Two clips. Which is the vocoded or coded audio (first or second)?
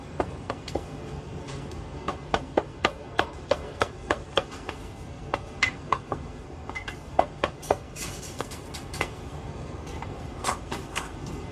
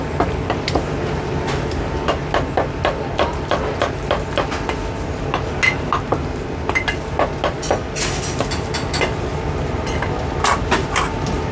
first